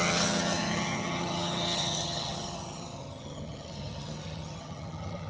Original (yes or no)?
no